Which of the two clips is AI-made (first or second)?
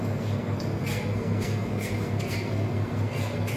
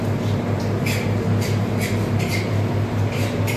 first